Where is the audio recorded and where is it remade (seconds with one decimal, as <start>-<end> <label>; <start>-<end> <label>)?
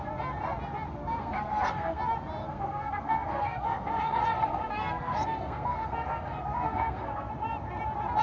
0.0-1.0 recorded; 1.0-2.0 remade; 2.0-2.4 recorded; 2.4-7.3 remade; 7.3-8.2 recorded